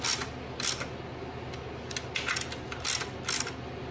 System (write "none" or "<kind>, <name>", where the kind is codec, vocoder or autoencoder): none